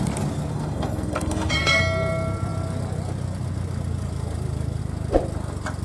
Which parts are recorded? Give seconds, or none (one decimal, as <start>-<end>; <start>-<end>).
0.0-0.5; 1.8-5.8